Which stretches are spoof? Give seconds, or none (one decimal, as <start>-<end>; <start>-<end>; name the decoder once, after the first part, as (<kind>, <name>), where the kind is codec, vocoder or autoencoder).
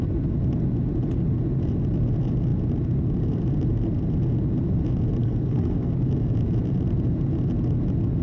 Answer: 5.2-5.9 (codec, SNAC)